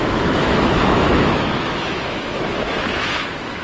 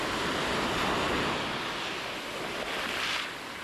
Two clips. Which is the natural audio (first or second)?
second